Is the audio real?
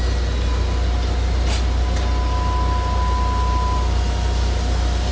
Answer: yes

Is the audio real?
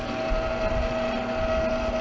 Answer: yes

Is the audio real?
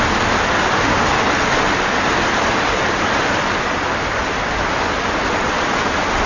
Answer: yes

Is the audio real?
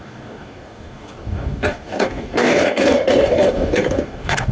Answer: no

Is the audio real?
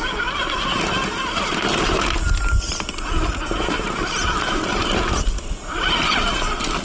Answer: yes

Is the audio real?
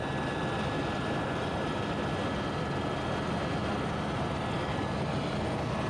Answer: yes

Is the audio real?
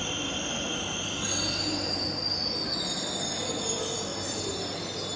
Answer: yes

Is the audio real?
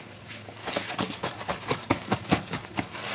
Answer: no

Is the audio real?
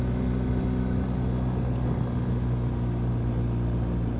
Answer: yes